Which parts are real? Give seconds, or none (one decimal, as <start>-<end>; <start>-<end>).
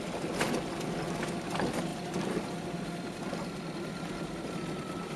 0.0-5.2